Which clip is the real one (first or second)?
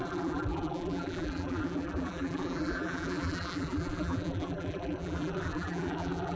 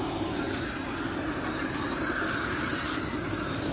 second